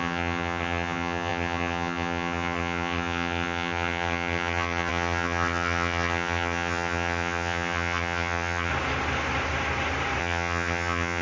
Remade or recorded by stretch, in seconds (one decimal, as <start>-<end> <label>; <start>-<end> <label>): 0.0-8.7 remade; 8.7-10.2 recorded; 10.2-11.2 remade